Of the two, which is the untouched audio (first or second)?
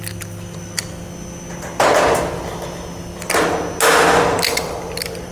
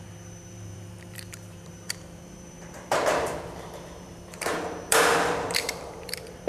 first